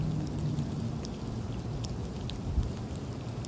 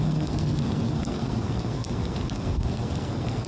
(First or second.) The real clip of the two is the first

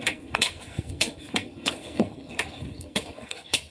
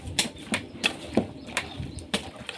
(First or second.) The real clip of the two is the second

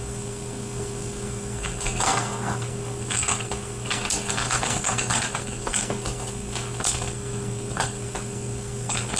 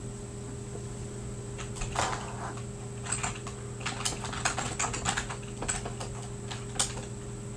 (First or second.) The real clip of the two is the second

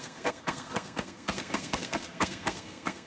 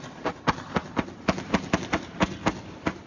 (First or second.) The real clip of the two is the second